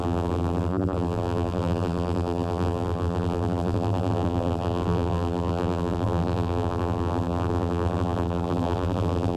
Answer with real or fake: fake